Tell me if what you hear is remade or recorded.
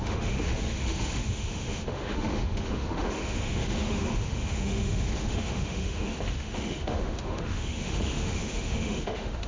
remade